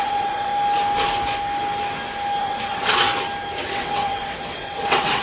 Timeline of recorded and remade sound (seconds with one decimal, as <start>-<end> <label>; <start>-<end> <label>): 0.0-0.5 remade; 0.5-2.4 recorded; 2.4-3.1 remade; 3.1-3.6 recorded; 3.6-5.2 remade